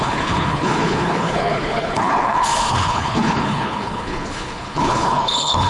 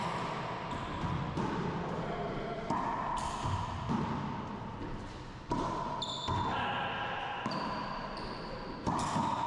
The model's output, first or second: first